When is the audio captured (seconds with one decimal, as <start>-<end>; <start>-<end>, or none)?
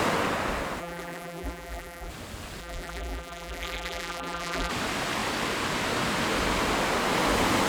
0.0-0.8; 2.1-2.6; 4.7-7.7